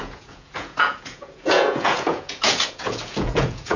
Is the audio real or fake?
fake